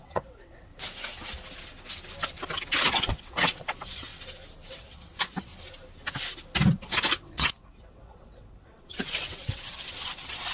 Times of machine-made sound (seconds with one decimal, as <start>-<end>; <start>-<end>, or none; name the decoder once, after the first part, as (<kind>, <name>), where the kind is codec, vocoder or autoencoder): 0.0-0.7 (vocoder, WaveNeXt); 2.9-4.1; 4.7-5.5; 7.1-10.5

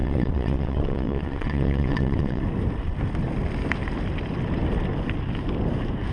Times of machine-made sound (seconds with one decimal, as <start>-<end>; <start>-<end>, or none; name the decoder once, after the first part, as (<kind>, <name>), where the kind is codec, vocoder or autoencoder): 0.0-2.4 (vocoder, WaveNeXt)

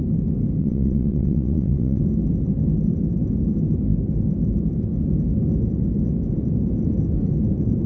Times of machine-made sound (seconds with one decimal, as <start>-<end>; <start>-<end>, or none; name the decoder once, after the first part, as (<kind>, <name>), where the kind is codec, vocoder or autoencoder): 0.6-2.0 (vocoder, WaveNeXt)

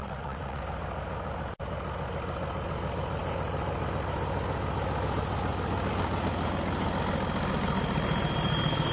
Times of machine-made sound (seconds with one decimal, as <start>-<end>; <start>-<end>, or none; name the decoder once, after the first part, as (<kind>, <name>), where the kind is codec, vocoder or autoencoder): 0.0-0.6 (vocoder, WaveNeXt)

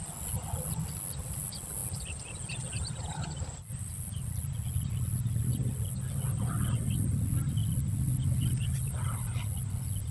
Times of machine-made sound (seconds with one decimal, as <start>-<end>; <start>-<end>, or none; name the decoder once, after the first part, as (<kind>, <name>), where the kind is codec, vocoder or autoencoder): none

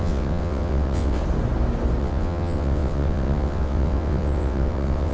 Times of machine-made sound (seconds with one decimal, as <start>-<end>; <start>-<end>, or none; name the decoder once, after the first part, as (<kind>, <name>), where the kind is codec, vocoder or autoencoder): 0.0-1.2 (vocoder, WaveNeXt); 2.0-5.1

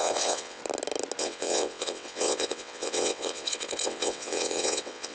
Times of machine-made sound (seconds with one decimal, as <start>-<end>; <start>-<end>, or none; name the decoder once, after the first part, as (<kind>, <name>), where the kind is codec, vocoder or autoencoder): 0.0-0.6 (vocoder, WaveNeXt); 1.2-5.1